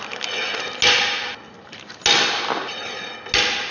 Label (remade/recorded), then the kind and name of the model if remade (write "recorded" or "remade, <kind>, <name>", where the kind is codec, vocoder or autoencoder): recorded